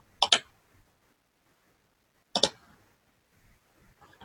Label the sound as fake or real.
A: real